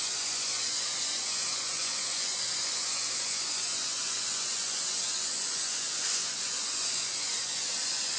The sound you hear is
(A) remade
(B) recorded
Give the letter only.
A